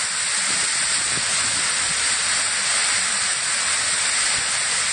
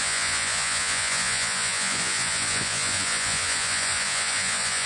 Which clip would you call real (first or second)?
first